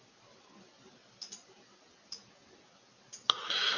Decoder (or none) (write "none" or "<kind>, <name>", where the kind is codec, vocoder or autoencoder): none